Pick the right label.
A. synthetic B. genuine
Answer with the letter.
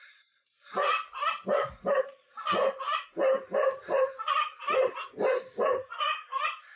A